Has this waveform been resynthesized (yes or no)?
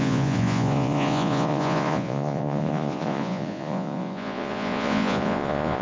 yes